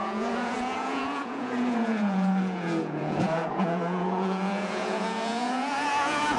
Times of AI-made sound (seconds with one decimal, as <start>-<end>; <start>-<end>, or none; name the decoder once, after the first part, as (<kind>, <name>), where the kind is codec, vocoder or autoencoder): 0.0-6.4 (vocoder, Vocos)